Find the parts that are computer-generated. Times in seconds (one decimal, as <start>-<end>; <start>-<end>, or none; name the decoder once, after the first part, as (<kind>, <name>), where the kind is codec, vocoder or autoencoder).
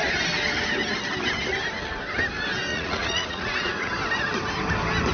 2.7-3.9 (vocoder, Vocos)